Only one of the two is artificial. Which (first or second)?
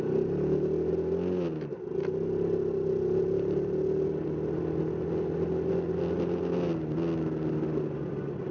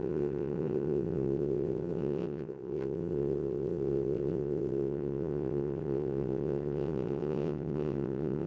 second